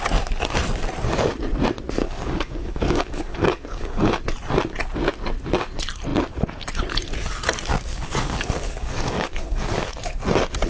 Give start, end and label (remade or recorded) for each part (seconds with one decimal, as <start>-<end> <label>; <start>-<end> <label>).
0.0-2.0 recorded; 2.0-4.1 remade; 4.1-7.7 recorded; 7.7-9.9 remade; 9.9-10.7 recorded